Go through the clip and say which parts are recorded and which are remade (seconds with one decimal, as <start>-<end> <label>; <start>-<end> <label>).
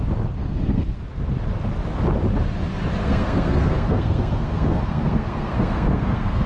0.0-0.4 recorded; 0.4-1.0 remade; 1.0-3.0 recorded; 3.0-6.5 remade